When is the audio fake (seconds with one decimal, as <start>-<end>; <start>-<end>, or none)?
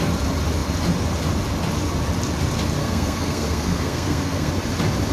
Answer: 2.8-4.5